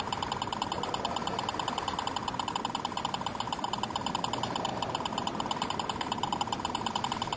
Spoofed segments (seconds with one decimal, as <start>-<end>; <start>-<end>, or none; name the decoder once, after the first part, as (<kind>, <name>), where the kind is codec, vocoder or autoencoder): none